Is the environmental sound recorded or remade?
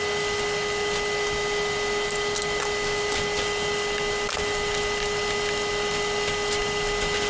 recorded